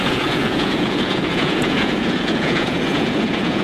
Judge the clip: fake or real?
fake